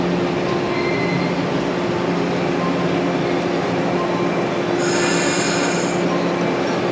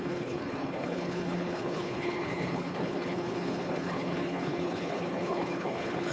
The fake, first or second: second